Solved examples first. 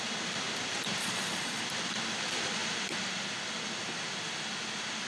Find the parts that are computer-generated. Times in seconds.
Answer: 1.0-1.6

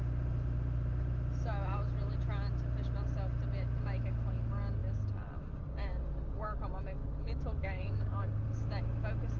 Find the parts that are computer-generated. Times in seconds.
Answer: 7.0-8.1

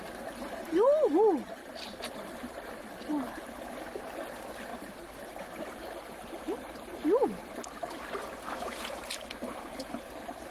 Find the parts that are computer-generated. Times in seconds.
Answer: none

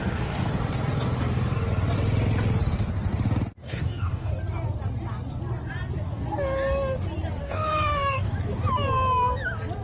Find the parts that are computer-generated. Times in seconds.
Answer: 0.0-0.5; 3.6-4.3; 7.4-8.3